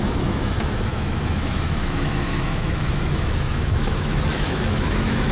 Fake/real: fake